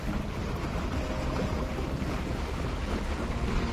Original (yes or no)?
yes